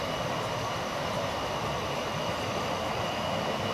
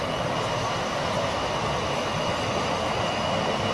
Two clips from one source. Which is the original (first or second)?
second